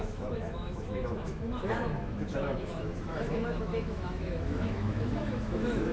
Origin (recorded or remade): remade